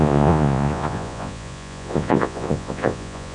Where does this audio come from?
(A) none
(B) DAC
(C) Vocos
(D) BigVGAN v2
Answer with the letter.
C